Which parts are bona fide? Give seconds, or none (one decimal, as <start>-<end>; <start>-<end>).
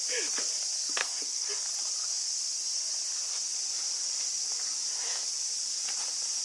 0.0-1.0; 1.5-6.4